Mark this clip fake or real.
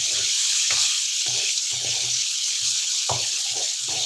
fake